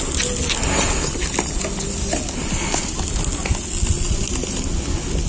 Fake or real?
real